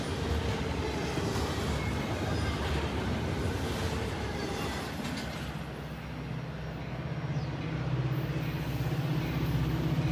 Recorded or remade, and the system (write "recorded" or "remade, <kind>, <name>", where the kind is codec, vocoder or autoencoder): recorded